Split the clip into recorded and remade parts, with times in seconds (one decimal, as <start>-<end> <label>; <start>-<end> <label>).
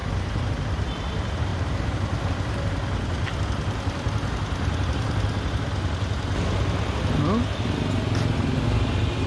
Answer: 0.0-1.5 recorded; 1.5-2.3 remade; 2.3-9.3 recorded